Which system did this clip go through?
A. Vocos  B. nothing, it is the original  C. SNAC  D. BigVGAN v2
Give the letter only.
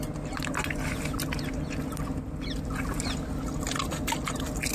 B